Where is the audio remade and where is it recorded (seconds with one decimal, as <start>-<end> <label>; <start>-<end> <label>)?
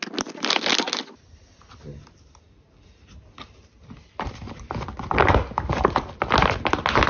0.0-7.1 recorded